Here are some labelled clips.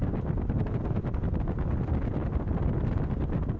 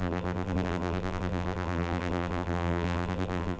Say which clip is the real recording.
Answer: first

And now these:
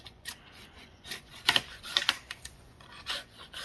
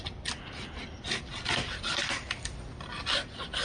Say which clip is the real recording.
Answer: second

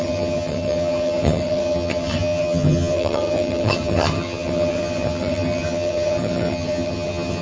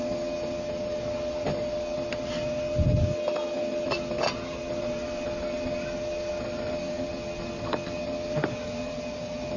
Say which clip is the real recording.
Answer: second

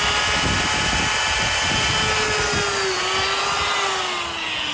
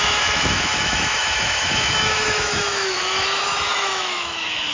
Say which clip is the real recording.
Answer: first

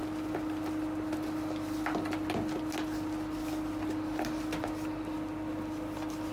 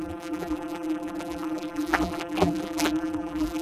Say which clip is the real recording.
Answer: first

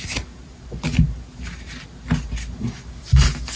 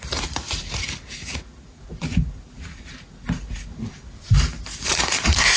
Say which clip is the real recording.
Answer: first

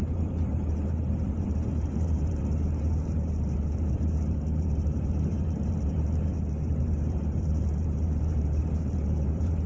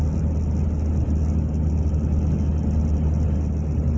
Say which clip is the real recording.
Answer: second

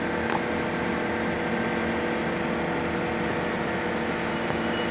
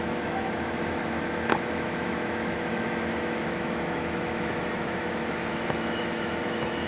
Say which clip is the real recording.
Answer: first